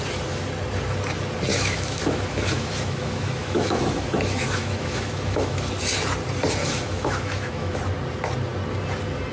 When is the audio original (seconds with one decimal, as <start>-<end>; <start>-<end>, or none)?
0.0-1.5; 5.7-6.6; 7.8-9.3